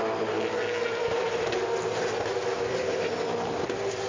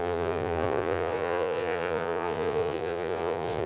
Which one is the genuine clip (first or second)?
first